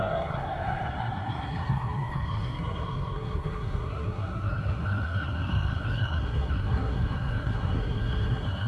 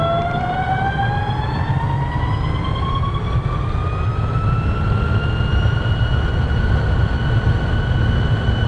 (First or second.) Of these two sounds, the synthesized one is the first